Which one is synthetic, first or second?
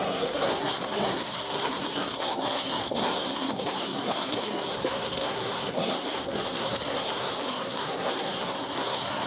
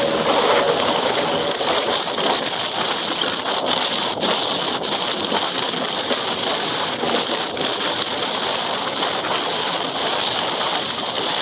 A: first